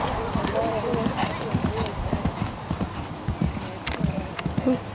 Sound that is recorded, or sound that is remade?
recorded